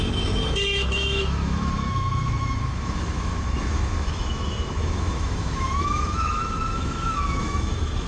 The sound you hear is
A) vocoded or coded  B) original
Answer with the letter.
A